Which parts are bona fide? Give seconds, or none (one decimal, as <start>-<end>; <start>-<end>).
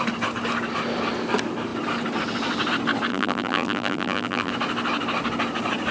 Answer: 0.0-3.1; 4.5-5.9